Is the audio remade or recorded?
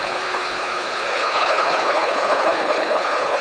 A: remade